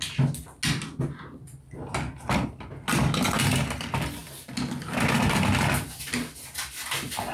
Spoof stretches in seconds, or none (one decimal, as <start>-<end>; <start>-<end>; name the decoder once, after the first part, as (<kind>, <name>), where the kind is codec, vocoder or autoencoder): none